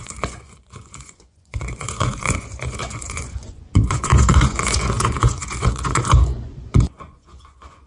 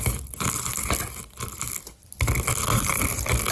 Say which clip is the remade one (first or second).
first